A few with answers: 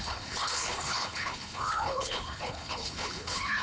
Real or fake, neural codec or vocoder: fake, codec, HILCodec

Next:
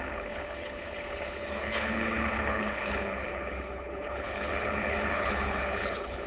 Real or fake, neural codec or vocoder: fake, codec, HILCodec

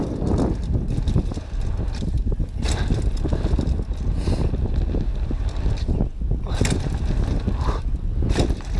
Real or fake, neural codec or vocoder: real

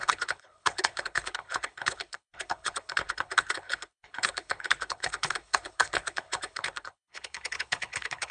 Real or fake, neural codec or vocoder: fake, codec, HILCodec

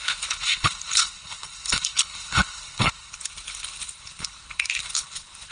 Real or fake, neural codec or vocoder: fake, codec, HILCodec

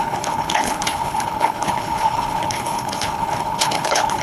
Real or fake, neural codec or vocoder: fake, codec, HILCodec